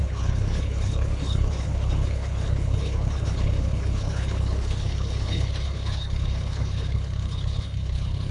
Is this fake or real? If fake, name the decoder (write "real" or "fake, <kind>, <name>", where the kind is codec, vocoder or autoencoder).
fake, codec, HILCodec